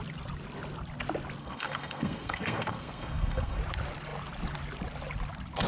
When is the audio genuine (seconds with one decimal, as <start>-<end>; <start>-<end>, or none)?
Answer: 0.0-1.4; 3.6-5.7